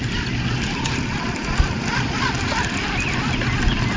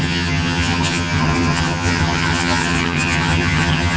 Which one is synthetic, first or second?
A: second